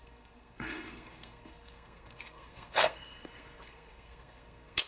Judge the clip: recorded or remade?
remade